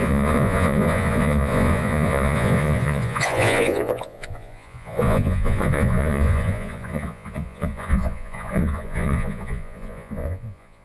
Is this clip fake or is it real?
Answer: fake